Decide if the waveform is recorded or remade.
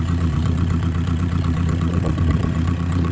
remade